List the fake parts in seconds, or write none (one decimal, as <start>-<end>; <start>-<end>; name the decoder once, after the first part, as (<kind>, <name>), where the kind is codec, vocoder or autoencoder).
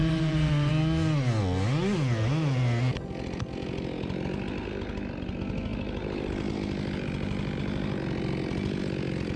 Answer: 0.0-0.7 (vocoder, BigVGAN v2)